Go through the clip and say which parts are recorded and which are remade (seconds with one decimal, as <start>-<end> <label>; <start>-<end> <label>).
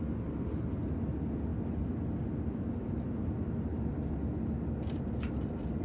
0.0-5.8 recorded